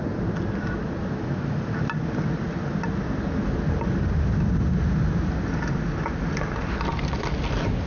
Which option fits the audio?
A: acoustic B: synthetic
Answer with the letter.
A